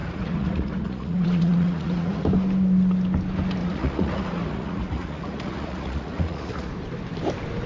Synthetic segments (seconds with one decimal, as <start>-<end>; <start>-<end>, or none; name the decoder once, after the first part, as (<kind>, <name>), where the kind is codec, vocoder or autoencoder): 0.0-2.2 (vocoder, Vocos); 3.6-6.7